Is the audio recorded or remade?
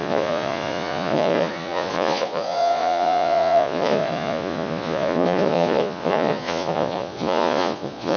remade